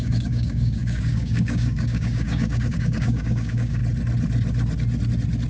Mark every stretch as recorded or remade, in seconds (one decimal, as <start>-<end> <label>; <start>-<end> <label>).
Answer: 0.0-3.8 remade; 3.8-5.5 recorded